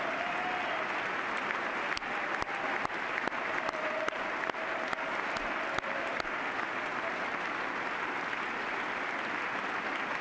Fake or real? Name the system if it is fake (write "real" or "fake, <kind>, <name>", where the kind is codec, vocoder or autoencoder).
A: real